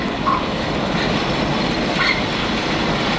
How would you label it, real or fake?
real